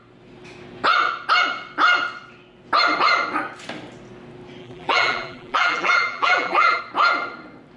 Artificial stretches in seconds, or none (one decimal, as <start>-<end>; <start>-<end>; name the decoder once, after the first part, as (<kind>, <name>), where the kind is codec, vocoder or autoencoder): 4.6-6.8 (vocoder, BigVGAN v2)